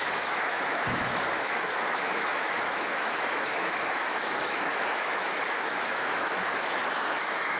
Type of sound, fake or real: fake